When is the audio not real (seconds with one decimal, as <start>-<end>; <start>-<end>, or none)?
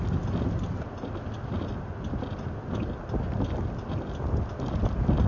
none